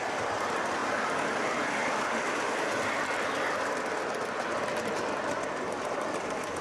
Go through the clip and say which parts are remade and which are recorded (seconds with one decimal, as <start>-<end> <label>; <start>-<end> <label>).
0.0-6.6 recorded